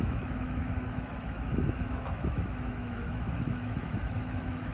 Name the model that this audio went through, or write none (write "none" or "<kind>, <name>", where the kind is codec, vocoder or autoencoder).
autoencoder, DAC-VAE